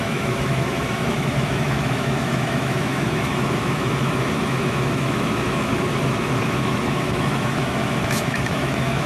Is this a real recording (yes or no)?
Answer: no